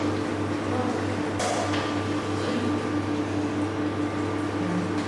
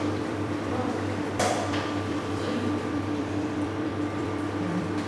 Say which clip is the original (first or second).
first